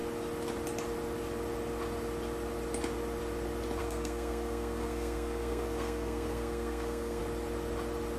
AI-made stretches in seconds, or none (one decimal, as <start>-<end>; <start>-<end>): 3.8-7.2